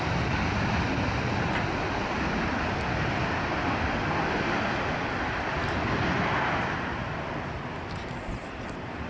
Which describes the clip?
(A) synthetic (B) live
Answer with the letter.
B